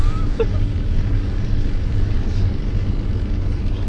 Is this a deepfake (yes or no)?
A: yes